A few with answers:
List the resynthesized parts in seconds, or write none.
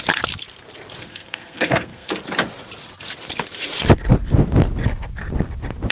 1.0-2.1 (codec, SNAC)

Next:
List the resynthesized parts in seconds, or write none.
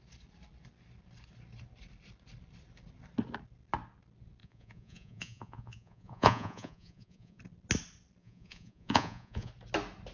4.4-7.4 (vocoder, Vocos); 8.2-9.5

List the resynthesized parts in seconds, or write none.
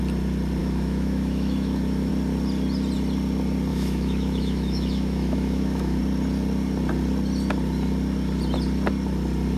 0.6-2.1 (autoencoder, DAC-VAE); 3.7-6.0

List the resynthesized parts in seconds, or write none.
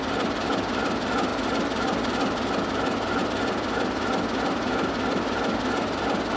none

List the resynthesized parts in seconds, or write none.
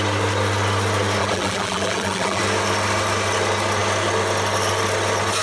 1.2-2.4 (vocoder, BigVGAN v2)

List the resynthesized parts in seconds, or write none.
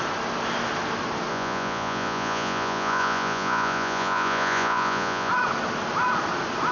1.3-5.3 (vocoder, Vocos)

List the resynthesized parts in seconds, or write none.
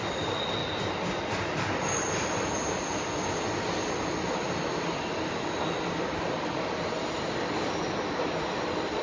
none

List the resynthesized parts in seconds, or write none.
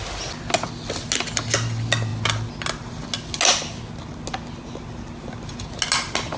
none